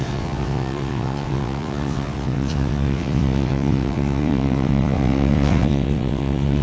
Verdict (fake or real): fake